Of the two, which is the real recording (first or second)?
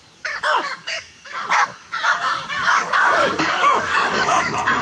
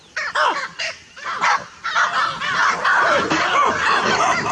second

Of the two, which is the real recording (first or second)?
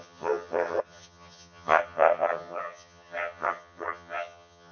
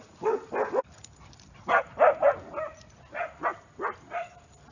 second